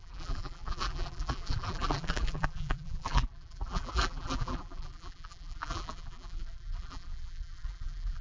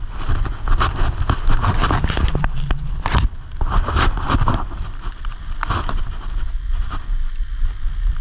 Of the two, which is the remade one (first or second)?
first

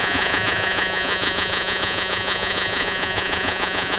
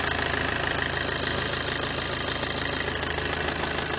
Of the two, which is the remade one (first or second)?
first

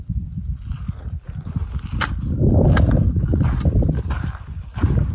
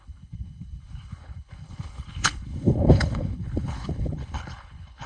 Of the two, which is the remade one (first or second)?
second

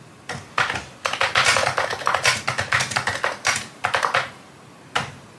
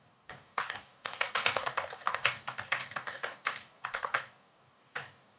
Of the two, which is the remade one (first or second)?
second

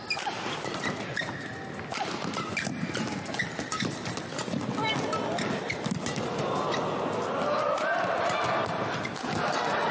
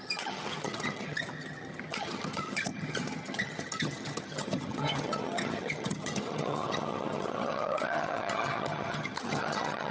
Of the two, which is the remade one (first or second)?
second